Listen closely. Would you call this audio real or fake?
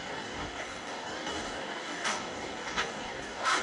fake